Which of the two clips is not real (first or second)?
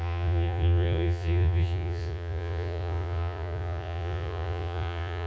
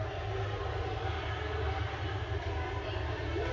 first